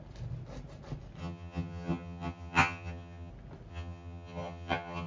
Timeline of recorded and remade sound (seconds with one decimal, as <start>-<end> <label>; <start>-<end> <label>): 0.0-1.2 recorded; 1.2-3.3 remade; 3.3-3.7 recorded; 3.7-5.1 remade